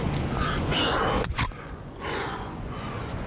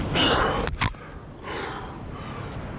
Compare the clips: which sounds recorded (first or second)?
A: second